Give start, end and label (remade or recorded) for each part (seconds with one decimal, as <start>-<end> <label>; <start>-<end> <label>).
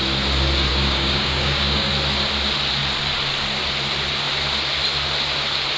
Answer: 0.0-0.7 recorded; 0.7-1.9 remade; 1.9-5.8 recorded